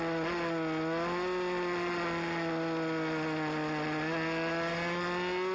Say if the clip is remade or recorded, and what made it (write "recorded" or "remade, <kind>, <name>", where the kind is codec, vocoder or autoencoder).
recorded